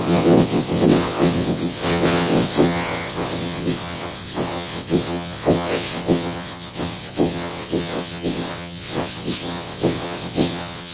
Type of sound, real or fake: fake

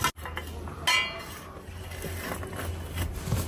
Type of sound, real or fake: real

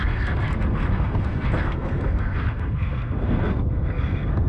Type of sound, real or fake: fake